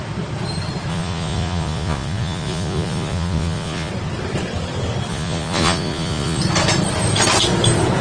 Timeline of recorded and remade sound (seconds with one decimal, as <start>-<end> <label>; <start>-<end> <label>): 0.0-0.9 recorded; 0.9-3.9 remade; 3.9-5.1 recorded; 5.1-6.4 remade; 6.4-8.0 recorded